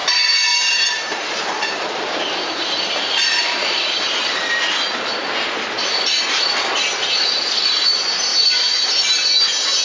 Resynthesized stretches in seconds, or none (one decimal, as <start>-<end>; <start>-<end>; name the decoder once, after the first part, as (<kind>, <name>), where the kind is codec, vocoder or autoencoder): 0.0-4.2 (vocoder, BigVGAN v2); 8.3-9.0